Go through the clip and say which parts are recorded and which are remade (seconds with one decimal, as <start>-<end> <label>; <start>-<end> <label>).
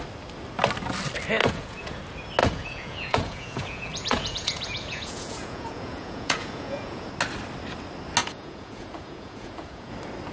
0.0-1.4 recorded; 1.4-2.0 remade; 2.0-2.4 recorded; 2.4-7.1 remade; 7.1-8.2 recorded; 8.2-9.9 remade; 9.9-10.3 recorded